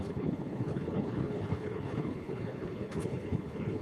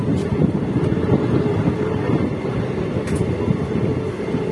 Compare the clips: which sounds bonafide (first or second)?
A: second